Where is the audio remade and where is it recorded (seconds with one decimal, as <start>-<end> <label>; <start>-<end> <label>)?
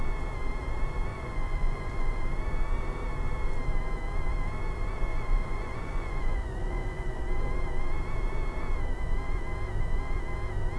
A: 0.0-1.1 recorded; 1.1-2.2 remade; 2.2-5.1 recorded; 5.1-7.2 remade; 7.2-10.8 recorded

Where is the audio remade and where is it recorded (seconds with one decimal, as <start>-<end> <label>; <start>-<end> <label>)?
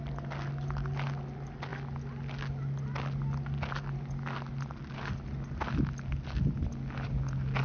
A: 0.0-7.6 recorded